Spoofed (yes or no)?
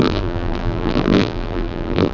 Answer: yes